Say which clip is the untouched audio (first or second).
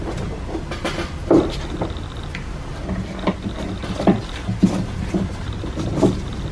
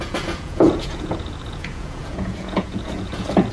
first